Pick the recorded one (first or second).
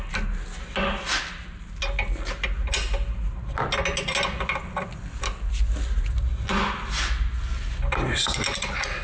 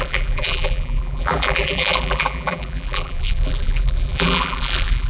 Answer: first